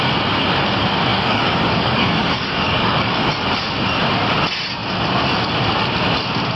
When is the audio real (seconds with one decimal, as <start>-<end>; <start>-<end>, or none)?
0.0-1.1; 3.3-6.6